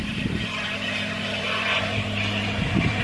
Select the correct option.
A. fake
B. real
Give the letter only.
A